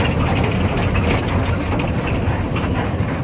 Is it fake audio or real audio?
real